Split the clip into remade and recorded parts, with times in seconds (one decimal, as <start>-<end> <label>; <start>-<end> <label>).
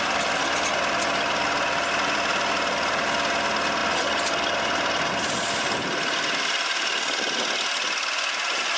0.0-8.8 recorded